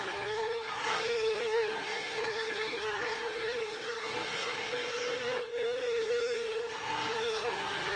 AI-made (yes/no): yes